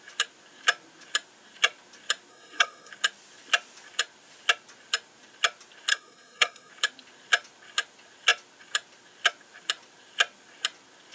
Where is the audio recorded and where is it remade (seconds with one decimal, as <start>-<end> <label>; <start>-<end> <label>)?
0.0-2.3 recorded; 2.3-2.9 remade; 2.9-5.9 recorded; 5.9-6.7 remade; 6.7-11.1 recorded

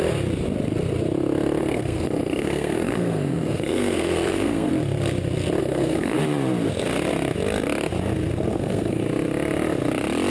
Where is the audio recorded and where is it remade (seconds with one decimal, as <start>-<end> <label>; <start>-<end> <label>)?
0.0-1.6 recorded; 1.6-4.7 remade; 4.7-5.6 recorded; 5.6-6.2 remade; 6.2-8.5 recorded; 8.5-9.0 remade; 9.0-10.3 recorded

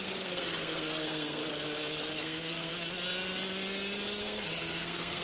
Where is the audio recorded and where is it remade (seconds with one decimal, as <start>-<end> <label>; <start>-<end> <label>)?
0.0-1.4 remade; 1.4-1.9 recorded; 1.9-2.7 remade; 2.7-4.2 recorded; 4.2-5.2 remade

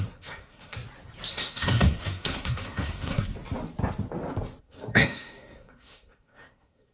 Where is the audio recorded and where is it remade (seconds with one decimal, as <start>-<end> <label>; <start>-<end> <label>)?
0.0-0.8 remade; 0.8-1.3 recorded; 1.3-3.3 remade; 3.3-4.6 recorded; 4.6-6.9 remade